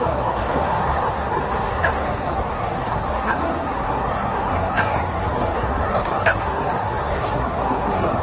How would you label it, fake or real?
fake